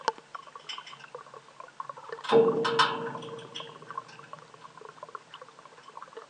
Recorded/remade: recorded